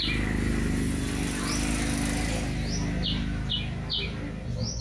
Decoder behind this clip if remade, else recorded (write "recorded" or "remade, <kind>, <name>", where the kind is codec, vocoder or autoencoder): recorded